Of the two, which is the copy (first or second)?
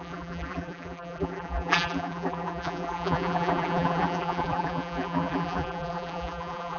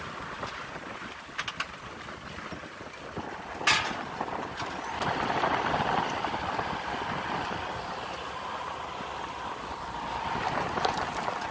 first